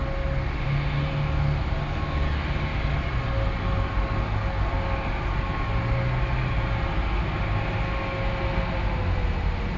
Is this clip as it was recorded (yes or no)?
yes